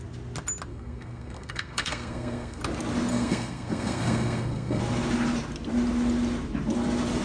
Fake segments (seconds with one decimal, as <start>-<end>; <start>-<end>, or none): 0.7-2.6; 3.1-4.8